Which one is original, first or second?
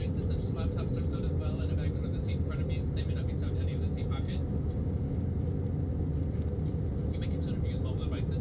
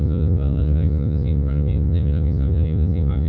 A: first